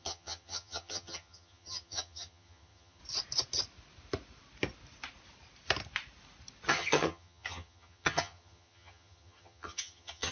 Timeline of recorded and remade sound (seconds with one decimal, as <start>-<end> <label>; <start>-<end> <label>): 0.0-3.0 remade; 3.0-6.7 recorded; 6.7-10.3 remade